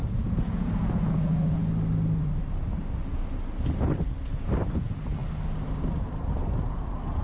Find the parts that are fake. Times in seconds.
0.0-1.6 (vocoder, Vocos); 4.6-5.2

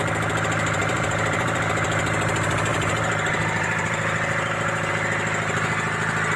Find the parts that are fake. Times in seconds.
0.8-1.6 (vocoder, BigVGAN v2); 2.7-4.9

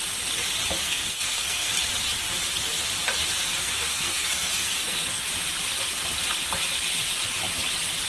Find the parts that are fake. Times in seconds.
0.8-1.7 (codec, SNAC); 3.6-5.2

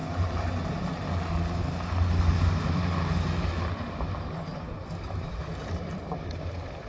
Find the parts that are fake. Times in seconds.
none

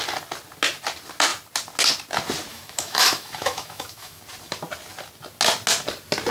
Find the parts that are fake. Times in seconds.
2.5-4.2 (autoencoder, DAC-VAE)

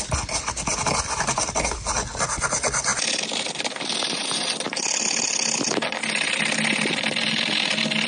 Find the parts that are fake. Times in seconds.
none

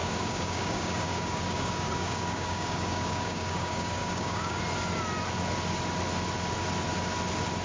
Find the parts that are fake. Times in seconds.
0.0-4.6 (codec, DAC)